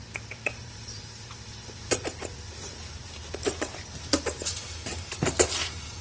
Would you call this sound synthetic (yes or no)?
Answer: yes